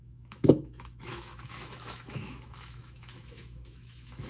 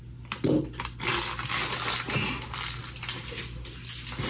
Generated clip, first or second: first